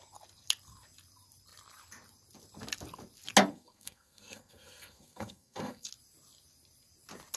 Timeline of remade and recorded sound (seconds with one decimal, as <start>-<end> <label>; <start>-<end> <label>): 0.0-3.5 recorded; 3.5-5.9 remade; 5.9-7.4 recorded